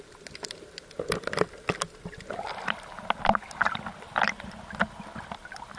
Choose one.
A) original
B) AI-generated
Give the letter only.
A